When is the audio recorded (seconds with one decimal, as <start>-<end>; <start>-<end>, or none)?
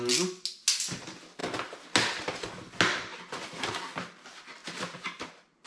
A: 0.0-3.1; 3.7-4.6; 5.3-5.7